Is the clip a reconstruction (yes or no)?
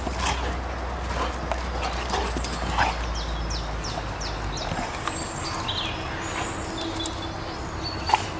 no